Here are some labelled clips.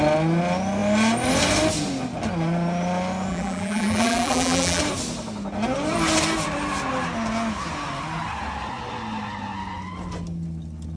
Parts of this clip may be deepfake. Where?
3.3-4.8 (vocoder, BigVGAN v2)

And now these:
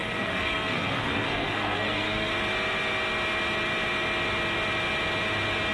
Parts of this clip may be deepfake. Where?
0.0-2.3 (codec, SNAC)

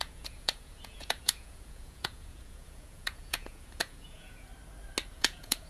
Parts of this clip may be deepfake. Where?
0.0-4.5 (vocoder, Vocos); 5.1-5.7

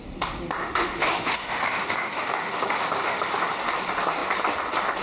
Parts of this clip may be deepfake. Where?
0.6-3.6 (autoencoder, DAC-VAE)

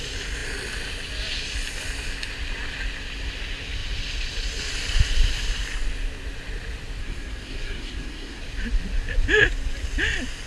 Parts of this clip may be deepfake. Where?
7.0-8.4 (codec, SNAC)

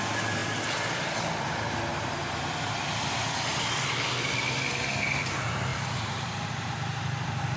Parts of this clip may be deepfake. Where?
0.4-1.0 (vocoder, BigVGAN v2); 1.9-3.9; 5.7-7.6